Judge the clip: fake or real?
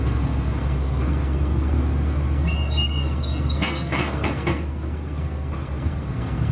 fake